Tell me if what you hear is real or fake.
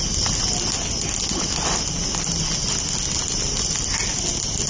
real